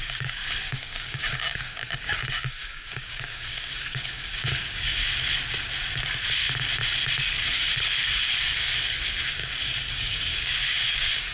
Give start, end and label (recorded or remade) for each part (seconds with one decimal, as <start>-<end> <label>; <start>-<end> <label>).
0.0-5.0 remade; 5.0-7.2 recorded; 7.2-9.4 remade; 9.4-9.9 recorded; 9.9-11.3 remade